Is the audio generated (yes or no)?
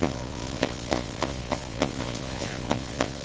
yes